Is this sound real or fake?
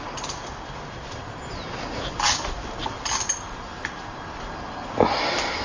real